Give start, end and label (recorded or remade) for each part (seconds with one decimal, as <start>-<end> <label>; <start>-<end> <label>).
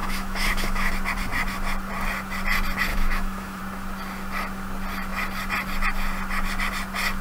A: 0.0-0.9 remade; 0.9-2.9 recorded; 2.9-3.6 remade; 3.6-7.2 recorded